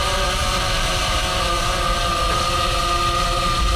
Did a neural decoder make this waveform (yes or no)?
no